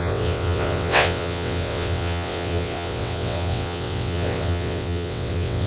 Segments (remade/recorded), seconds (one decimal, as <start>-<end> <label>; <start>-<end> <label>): 0.0-5.7 remade